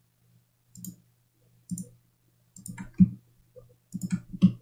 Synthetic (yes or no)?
no